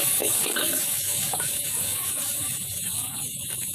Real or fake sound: fake